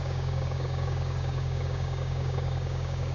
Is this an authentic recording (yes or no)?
no